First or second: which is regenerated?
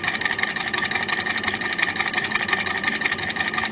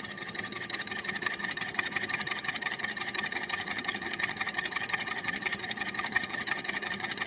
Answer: second